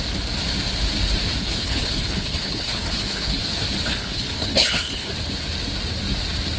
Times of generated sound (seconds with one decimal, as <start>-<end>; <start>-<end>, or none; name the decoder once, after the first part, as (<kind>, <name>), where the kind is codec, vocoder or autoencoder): 1.4-3.4 (codec, HILCodec); 3.9-5.1